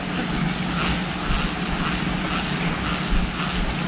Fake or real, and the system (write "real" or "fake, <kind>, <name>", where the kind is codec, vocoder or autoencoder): real